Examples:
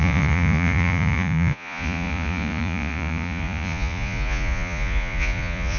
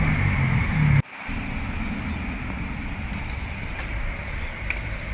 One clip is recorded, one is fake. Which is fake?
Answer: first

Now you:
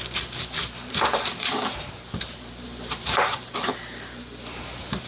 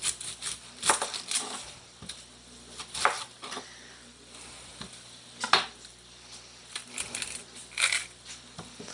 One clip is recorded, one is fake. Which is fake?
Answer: first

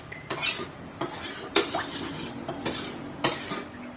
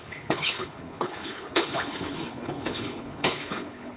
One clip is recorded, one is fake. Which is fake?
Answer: second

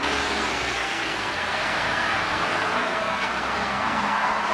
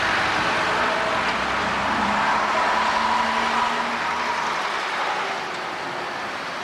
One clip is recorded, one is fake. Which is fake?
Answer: first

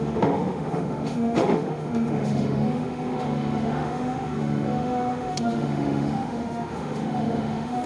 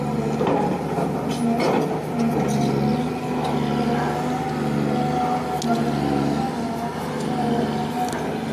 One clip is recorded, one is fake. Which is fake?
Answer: first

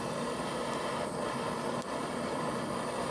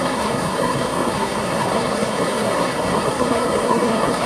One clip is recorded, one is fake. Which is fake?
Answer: second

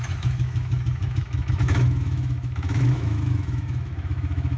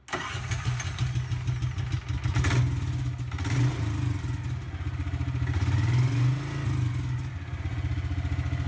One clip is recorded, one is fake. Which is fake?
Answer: first